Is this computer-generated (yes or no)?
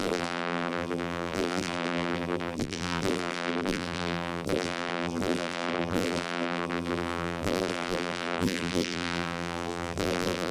yes